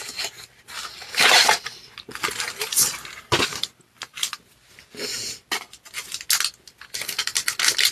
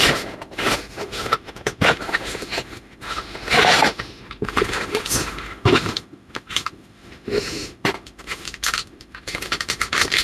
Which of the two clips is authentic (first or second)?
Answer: first